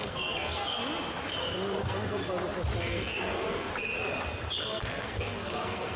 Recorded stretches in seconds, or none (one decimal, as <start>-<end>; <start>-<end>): 0.8-1.8; 2.2-2.8; 3.7-4.6